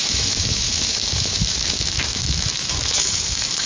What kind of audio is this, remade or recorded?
remade